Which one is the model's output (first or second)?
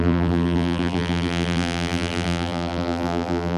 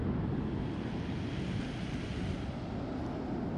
first